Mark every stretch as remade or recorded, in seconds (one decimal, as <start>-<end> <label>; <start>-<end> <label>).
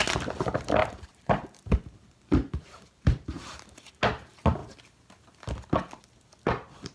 0.0-0.8 recorded; 0.8-3.9 remade; 3.9-6.9 recorded